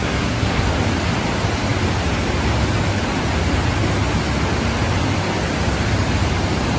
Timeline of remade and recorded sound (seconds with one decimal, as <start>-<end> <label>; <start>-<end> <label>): 0.0-0.6 remade; 0.6-6.8 recorded